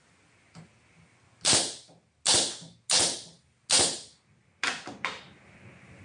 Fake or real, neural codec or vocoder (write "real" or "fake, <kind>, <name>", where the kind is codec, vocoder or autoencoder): real